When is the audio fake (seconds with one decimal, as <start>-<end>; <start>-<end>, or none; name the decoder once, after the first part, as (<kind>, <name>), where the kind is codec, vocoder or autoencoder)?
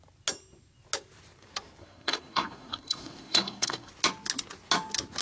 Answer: 1.8-3.9 (codec, SNAC)